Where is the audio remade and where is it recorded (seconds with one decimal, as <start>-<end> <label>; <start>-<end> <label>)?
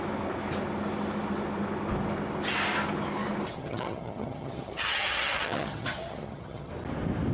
0.0-3.5 recorded; 3.5-6.7 remade; 6.7-7.3 recorded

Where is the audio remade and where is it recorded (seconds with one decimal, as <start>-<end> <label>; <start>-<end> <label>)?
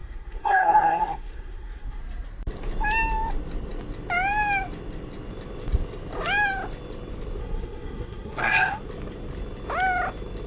0.0-2.0 remade; 2.0-7.4 recorded; 7.4-8.8 remade; 8.8-10.5 recorded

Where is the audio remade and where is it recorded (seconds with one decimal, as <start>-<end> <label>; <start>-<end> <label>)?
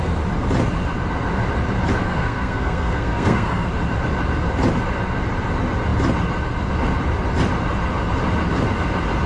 0.0-2.0 recorded; 2.0-3.7 remade; 3.7-9.3 recorded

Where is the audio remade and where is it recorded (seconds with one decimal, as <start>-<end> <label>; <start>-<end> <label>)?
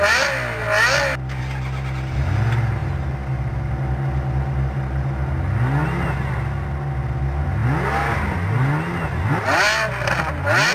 0.0-10.7 recorded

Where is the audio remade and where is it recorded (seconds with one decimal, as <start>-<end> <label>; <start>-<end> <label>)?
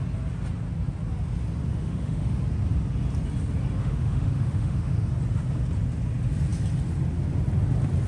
0.0-1.7 recorded; 1.7-2.4 remade; 2.4-3.8 recorded; 3.8-5.1 remade; 5.1-8.1 recorded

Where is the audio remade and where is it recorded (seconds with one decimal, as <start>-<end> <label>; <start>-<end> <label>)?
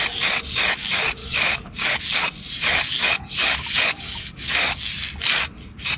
0.0-1.2 recorded; 1.2-2.0 remade; 2.0-3.0 recorded; 3.0-4.8 remade; 4.8-6.0 recorded